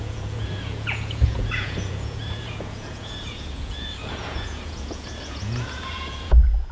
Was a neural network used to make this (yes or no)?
yes